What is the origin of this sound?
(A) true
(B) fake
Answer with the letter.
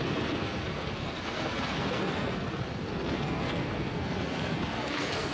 B